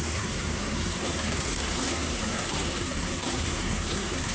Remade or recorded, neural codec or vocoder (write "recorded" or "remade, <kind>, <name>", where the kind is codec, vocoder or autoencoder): remade, codec, SNAC